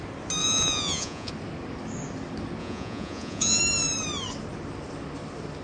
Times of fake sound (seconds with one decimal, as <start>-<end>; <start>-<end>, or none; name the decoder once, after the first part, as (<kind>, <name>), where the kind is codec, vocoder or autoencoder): 0.4-1.3 (vocoder, Vocos); 2.6-3.6